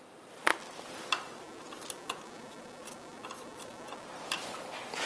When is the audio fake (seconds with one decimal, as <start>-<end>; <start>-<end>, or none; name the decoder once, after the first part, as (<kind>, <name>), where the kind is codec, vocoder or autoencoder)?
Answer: none